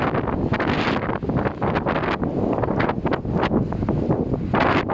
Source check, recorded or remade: recorded